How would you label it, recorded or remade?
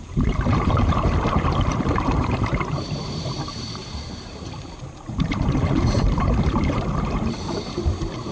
remade